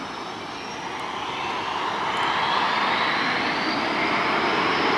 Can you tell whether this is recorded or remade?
recorded